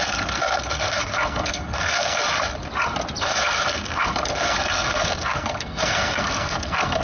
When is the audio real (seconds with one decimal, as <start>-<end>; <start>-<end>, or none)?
2.2-3.2